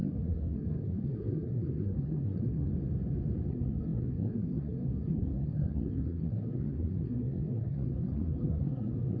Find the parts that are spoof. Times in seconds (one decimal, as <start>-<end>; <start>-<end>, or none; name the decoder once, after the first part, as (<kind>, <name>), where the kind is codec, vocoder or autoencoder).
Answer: 0.0-2.7 (codec, SNAC); 3.5-9.2